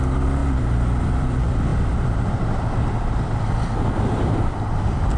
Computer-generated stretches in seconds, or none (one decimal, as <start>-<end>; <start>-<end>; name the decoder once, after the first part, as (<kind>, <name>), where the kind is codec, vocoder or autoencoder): 0.0-0.4 (vocoder, BigVGAN v2); 1.0-5.2